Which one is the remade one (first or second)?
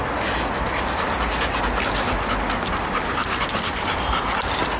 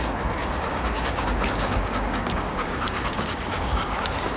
second